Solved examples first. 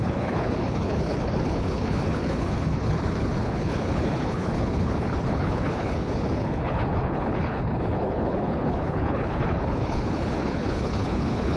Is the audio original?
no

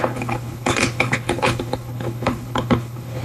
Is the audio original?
no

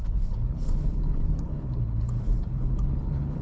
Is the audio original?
no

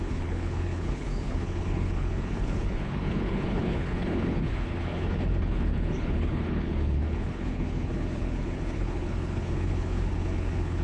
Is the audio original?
no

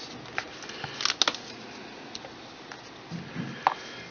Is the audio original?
yes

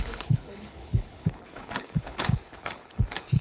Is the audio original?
no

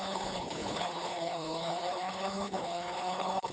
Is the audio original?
no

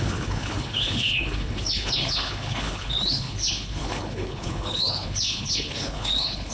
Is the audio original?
no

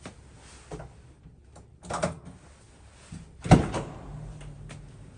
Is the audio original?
yes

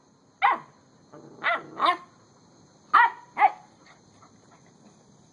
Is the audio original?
yes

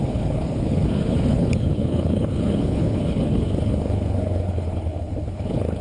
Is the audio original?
no